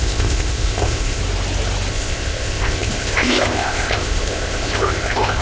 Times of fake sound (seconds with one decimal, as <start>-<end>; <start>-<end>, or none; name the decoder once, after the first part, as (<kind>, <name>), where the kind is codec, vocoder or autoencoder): 0.0-1.2 (codec, ZipCodec); 1.9-5.4